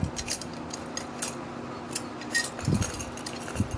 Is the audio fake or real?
real